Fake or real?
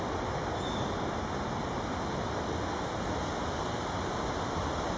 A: real